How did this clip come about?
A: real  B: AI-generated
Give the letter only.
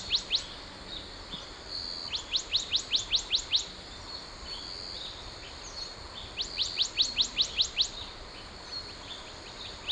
A